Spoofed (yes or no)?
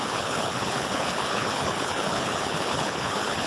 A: yes